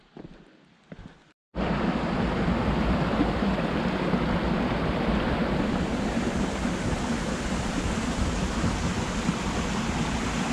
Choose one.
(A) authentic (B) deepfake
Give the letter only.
A